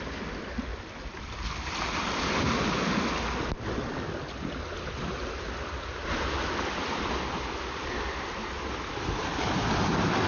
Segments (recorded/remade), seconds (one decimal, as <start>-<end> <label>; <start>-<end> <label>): 0.0-10.3 recorded